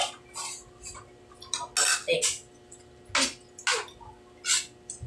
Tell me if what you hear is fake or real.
real